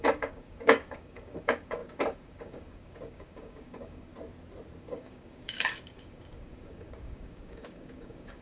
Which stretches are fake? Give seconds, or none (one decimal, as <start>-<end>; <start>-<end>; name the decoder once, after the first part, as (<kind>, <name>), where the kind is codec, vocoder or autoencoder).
0.0-4.1 (codec, DAC); 4.8-8.4